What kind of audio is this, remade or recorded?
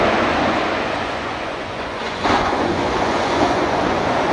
remade